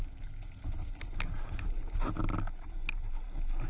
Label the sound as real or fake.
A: real